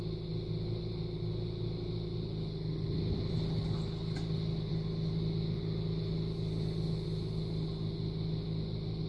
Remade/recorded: recorded